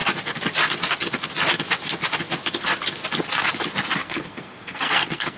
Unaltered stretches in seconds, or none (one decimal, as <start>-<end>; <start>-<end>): 0.0-4.0